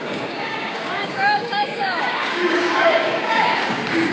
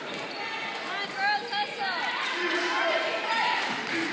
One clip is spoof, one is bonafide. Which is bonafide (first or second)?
second